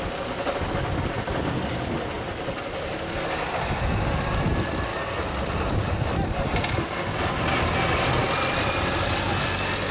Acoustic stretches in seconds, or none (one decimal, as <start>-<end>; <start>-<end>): 0.0-9.9